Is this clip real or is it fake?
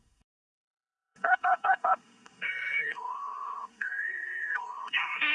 fake